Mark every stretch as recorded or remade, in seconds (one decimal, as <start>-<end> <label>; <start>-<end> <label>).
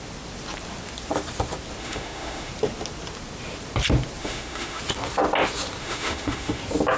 0.0-1.8 recorded; 1.8-2.5 remade; 2.5-4.2 recorded; 4.2-4.8 remade; 4.8-5.8 recorded; 5.8-6.6 remade; 6.6-7.0 recorded